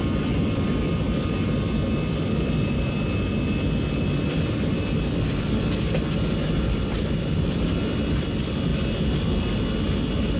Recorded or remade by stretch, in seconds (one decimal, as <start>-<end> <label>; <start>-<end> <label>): 0.0-10.4 recorded